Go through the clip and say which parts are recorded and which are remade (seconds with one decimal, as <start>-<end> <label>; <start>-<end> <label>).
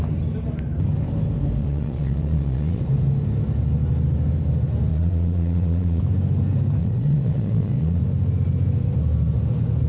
0.0-1.6 recorded; 1.6-2.8 remade; 2.8-4.9 recorded; 4.9-6.0 remade; 6.0-6.8 recorded; 6.8-8.0 remade; 8.0-9.9 recorded